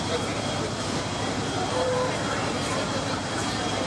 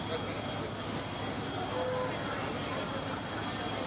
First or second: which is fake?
first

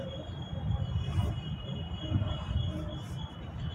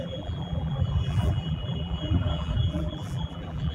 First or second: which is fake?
second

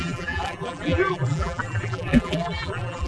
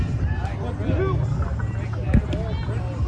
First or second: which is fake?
first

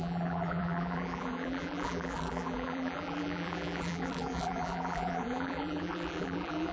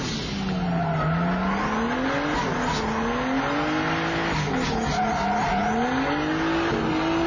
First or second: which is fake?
first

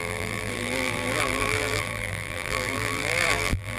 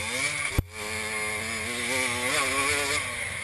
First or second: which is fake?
first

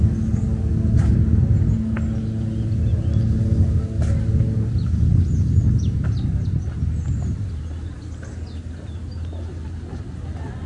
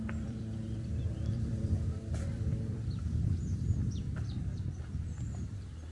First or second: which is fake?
second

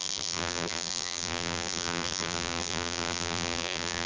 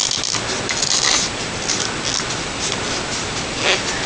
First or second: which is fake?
first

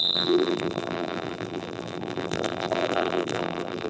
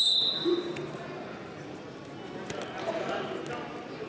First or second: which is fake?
first